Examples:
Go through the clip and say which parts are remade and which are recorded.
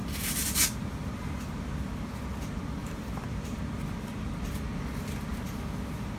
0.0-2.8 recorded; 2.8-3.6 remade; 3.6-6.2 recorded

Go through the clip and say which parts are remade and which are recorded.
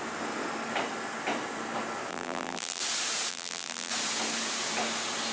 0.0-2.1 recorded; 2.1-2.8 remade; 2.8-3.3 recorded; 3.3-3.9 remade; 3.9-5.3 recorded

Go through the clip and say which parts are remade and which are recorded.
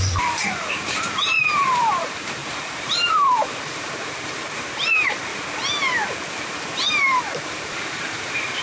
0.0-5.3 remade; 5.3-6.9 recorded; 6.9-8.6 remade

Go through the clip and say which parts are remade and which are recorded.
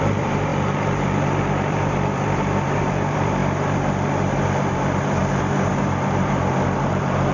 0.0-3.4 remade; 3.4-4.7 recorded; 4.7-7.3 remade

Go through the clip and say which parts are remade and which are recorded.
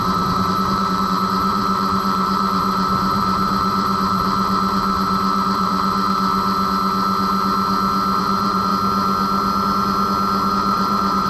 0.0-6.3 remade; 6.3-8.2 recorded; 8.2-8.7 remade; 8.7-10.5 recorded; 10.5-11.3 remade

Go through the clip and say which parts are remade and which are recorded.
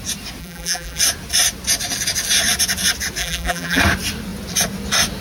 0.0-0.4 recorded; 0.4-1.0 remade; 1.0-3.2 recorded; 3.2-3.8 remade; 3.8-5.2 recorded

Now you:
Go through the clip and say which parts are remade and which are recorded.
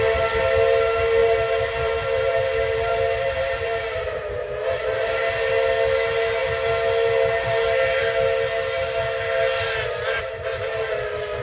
0.0-1.2 recorded; 1.2-4.2 remade; 4.2-11.4 recorded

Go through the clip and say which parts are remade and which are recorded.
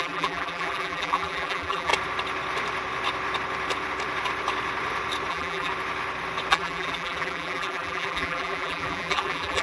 0.0-1.9 remade; 1.9-5.3 recorded; 5.3-5.7 remade; 5.7-6.5 recorded; 6.5-9.6 remade